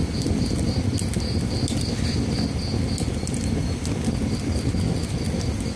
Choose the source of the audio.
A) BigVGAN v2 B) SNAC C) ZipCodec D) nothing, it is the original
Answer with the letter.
D